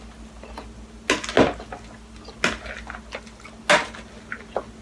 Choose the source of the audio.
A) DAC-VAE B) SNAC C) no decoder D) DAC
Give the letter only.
C